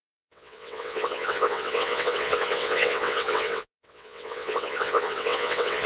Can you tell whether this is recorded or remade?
remade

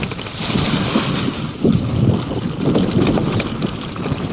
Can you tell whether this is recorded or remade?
recorded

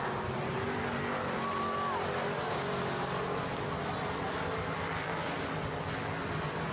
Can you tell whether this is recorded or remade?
recorded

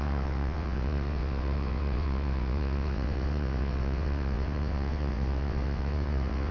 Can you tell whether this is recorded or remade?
remade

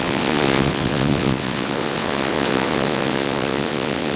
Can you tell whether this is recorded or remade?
remade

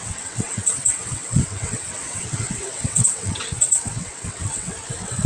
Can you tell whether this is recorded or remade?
remade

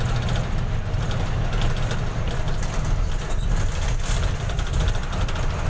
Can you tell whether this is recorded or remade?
recorded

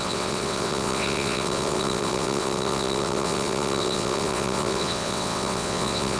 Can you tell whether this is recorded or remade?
remade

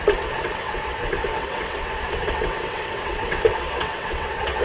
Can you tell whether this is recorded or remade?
remade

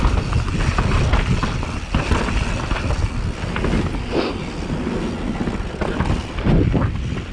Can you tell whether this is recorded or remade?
recorded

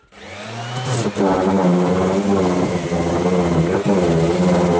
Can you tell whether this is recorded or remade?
recorded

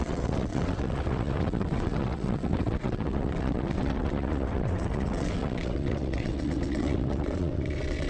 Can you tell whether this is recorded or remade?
remade